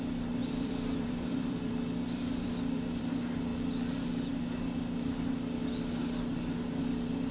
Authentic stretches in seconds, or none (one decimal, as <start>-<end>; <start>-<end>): 0.0-0.4; 3.1-7.3